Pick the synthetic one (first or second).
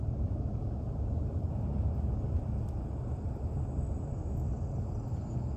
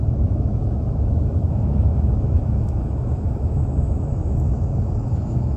second